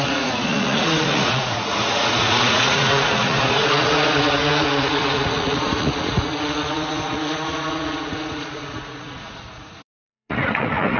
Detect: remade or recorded remade